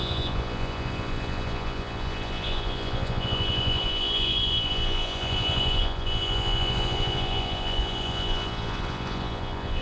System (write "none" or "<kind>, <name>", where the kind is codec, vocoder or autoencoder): vocoder, Vocos